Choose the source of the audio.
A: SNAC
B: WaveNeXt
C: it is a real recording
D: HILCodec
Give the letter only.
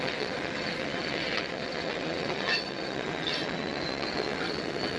B